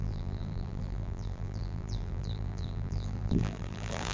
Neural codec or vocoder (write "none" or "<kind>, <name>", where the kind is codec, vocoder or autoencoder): vocoder, BigVGAN v2